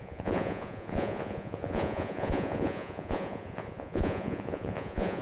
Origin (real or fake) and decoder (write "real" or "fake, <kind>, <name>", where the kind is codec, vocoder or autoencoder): fake, vocoder, Vocos